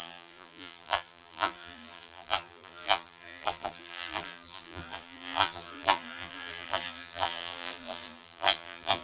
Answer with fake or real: fake